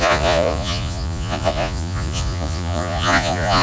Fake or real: fake